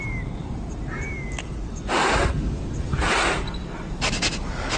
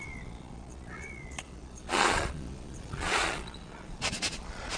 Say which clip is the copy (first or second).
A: second